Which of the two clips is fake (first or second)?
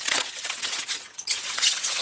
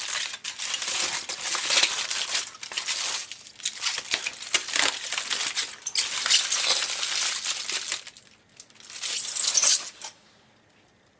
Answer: first